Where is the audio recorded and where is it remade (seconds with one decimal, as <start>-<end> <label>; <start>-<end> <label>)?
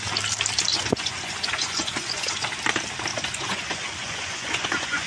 0.0-0.7 recorded; 0.7-2.5 remade; 2.5-3.1 recorded; 3.1-5.1 remade